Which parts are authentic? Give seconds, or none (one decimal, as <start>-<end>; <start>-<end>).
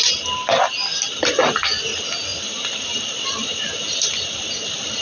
0.0-2.3